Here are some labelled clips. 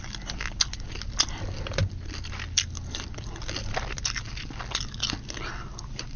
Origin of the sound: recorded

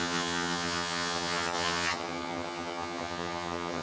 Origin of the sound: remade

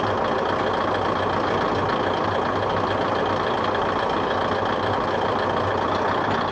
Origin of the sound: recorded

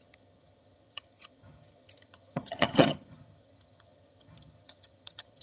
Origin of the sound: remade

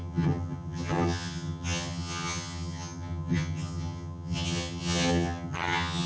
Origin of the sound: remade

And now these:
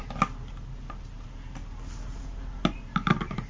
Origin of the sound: recorded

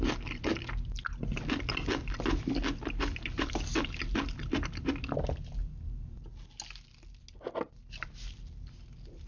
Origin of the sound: recorded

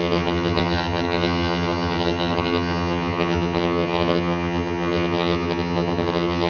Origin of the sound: remade